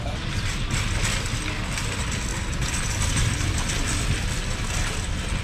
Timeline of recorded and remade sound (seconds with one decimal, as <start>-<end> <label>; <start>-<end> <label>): 0.0-5.4 recorded